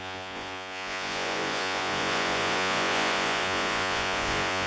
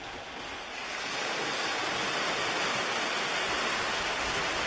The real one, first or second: second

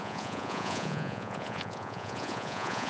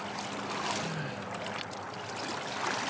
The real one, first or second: second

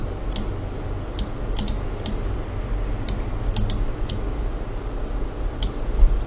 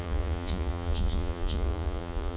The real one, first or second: first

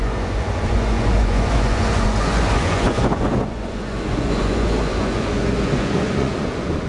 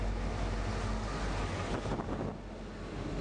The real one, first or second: second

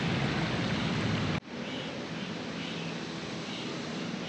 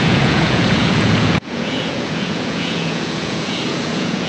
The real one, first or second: first